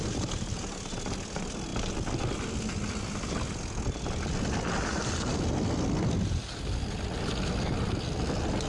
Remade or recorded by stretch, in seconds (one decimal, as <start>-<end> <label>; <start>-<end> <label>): 0.0-8.7 recorded